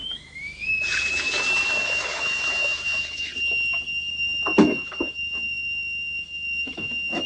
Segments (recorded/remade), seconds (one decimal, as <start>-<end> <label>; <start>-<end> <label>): 0.0-3.3 remade; 3.3-4.1 recorded; 4.1-7.3 remade